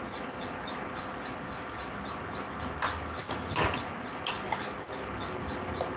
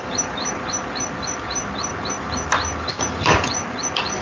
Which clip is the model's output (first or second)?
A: second